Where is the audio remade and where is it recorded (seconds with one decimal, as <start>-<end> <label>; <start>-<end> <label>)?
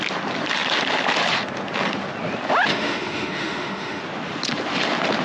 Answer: 0.0-2.7 recorded; 2.7-4.0 remade; 4.0-5.2 recorded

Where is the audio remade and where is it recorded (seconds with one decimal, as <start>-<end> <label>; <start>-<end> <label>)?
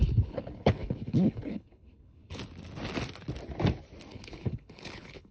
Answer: 0.0-2.4 remade; 2.4-4.1 recorded; 4.1-5.3 remade